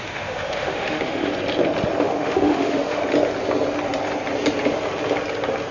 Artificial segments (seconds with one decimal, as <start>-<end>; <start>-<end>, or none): 0.0-1.3; 2.0-3.0